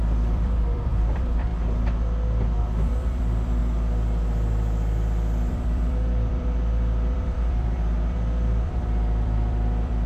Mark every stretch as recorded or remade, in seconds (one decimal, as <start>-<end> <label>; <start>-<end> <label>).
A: 0.0-1.5 remade; 1.5-2.6 recorded; 2.6-3.6 remade; 3.6-5.5 recorded; 5.5-10.1 remade